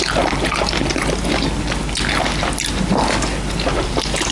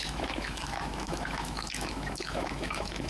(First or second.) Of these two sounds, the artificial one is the second